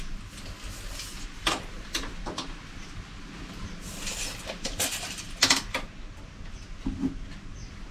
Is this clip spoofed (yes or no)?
no